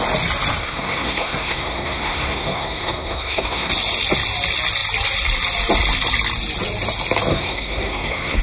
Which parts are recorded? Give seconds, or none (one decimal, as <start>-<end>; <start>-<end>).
0.0-0.6; 3.7-7.3